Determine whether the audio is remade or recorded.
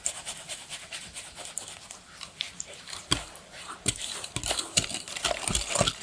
remade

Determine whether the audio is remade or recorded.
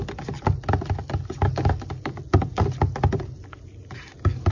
recorded